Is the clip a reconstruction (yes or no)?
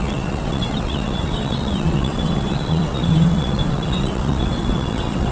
yes